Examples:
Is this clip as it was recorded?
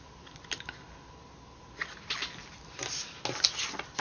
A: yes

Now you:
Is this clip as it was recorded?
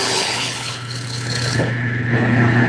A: no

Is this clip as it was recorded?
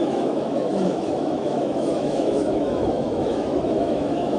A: no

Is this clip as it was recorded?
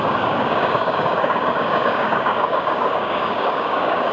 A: no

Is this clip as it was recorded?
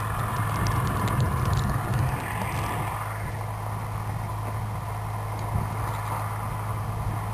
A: yes